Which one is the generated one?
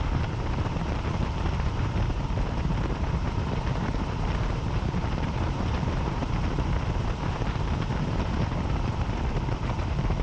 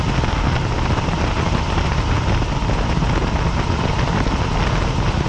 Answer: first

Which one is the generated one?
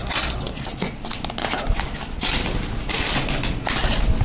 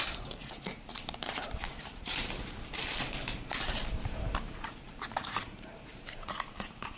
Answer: second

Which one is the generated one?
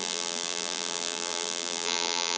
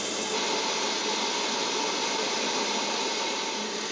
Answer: first